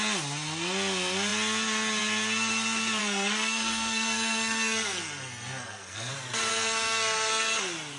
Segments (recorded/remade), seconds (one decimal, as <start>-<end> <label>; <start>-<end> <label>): 0.0-3.0 recorded; 3.0-6.1 remade; 6.1-6.5 recorded; 6.5-7.6 remade; 7.6-8.0 recorded